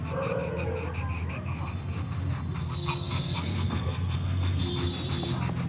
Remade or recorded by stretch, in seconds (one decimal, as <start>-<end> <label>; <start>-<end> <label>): 0.0-2.6 recorded; 2.6-4.6 remade; 4.6-5.7 recorded